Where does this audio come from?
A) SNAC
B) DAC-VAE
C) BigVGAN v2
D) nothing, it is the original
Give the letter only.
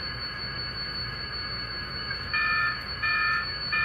B